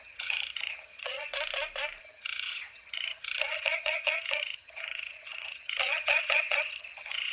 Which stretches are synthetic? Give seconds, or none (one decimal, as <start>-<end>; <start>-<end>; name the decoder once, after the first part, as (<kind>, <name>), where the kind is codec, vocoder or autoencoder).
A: 0.0-1.3 (vocoder, HiFi-GAN); 2.0-7.3